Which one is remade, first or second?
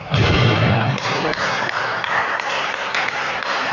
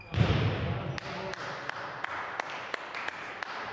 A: first